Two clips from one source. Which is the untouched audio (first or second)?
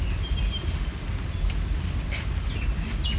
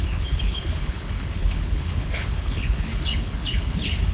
first